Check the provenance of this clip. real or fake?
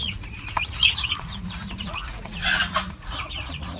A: fake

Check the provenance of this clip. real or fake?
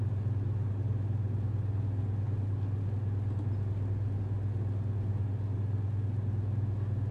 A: real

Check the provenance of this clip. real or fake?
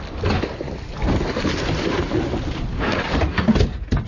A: real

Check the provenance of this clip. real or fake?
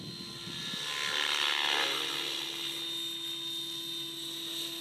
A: real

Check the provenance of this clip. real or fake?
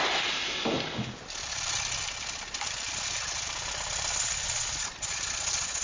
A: real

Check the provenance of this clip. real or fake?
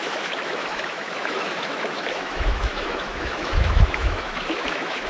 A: fake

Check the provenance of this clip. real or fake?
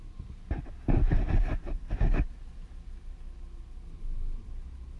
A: real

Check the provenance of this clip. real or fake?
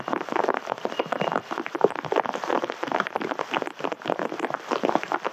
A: fake